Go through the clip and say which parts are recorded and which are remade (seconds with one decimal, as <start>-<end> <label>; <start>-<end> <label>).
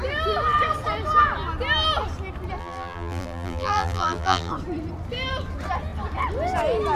0.0-2.6 recorded; 2.6-4.5 remade; 4.5-7.0 recorded